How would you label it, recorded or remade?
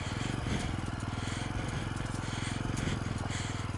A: recorded